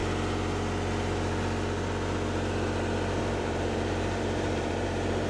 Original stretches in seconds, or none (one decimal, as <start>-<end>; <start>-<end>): 0.0-3.2